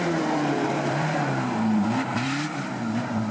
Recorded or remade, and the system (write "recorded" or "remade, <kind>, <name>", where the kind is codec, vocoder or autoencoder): remade, vocoder, BigVGAN v2